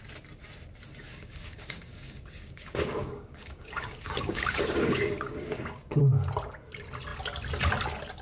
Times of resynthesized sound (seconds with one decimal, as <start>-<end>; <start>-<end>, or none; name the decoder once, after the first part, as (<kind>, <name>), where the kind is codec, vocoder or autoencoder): 1.1-6.0 (codec, DAC)